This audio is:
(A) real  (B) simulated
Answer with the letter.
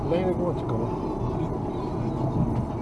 A